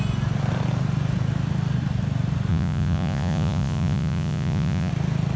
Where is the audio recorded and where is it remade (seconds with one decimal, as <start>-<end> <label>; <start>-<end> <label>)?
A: 0.0-2.5 recorded; 2.5-4.9 remade; 4.9-5.4 recorded